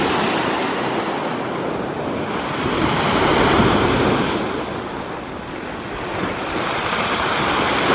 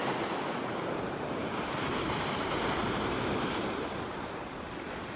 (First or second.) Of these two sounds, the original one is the first